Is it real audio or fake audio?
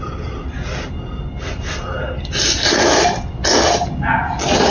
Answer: real